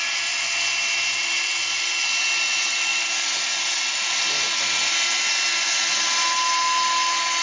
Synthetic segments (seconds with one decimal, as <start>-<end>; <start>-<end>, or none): none